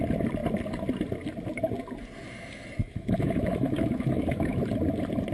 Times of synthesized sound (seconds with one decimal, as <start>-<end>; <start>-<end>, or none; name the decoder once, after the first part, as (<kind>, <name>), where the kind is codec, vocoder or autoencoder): 2.8-4.6 (autoencoder, DAC-VAE)